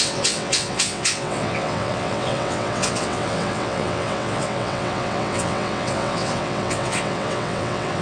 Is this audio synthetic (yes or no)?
yes